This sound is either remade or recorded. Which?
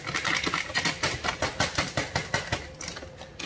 recorded